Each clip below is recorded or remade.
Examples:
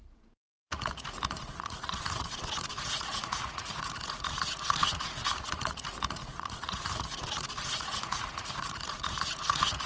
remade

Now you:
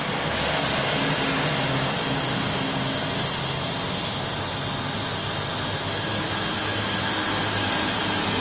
recorded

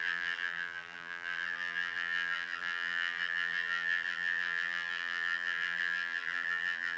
remade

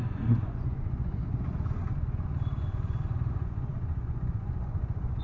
remade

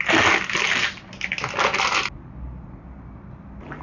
recorded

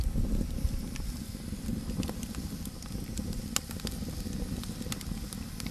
recorded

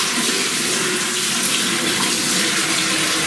recorded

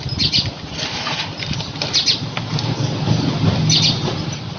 recorded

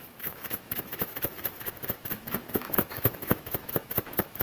remade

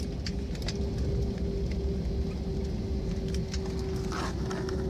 recorded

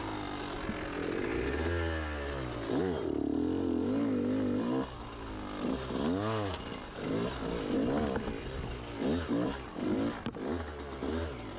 recorded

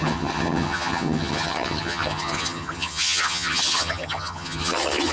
remade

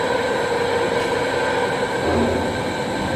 recorded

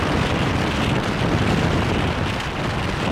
recorded